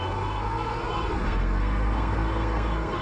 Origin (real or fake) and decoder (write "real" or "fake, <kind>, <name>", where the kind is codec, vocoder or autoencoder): fake, codec, SNAC